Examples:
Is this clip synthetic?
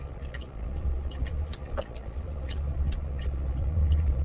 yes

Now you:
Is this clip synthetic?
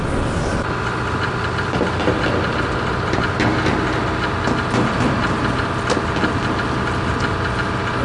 no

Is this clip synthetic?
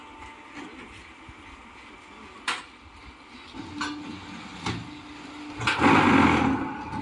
no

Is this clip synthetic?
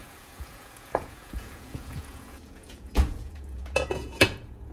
yes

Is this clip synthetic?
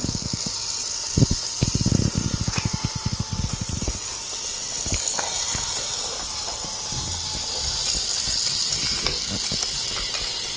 no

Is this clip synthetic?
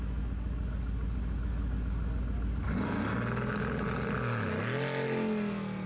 no